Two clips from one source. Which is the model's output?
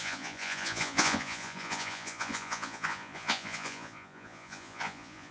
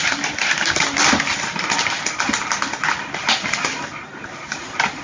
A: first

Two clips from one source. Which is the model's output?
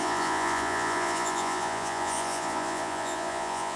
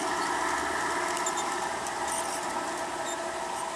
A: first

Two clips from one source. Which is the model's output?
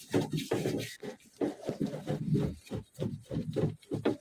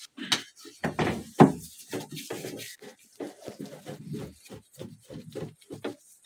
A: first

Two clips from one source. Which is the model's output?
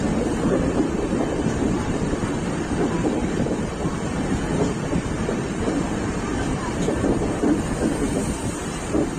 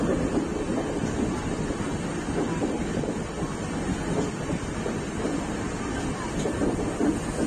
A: first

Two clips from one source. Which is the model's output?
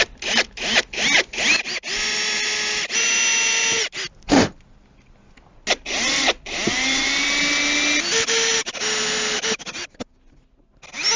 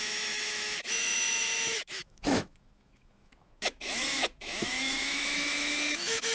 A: second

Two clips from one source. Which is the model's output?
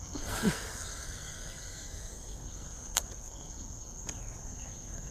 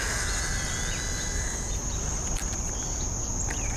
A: first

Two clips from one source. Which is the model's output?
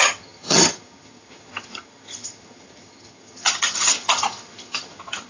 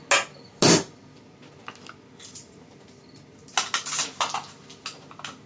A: first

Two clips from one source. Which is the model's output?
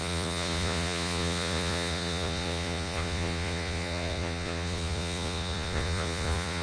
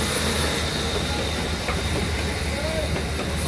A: first